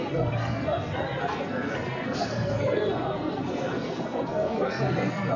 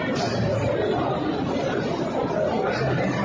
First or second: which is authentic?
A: second